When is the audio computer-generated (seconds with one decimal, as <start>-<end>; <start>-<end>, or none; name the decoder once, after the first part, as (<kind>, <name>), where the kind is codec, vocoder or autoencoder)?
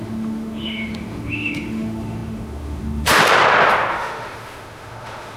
0.0-3.2 (autoencoder, DAC-VAE); 3.9-5.4